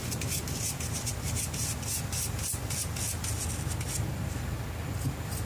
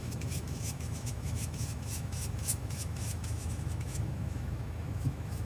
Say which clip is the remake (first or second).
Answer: second